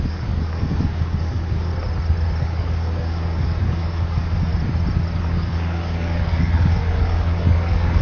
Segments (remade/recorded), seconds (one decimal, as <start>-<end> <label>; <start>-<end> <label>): 0.0-1.7 remade; 1.7-2.4 recorded; 2.4-4.5 remade; 4.5-5.2 recorded; 5.2-8.0 remade